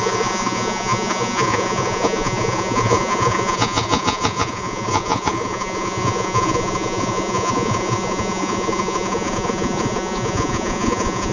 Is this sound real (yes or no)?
no